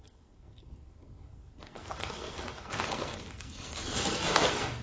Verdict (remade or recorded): remade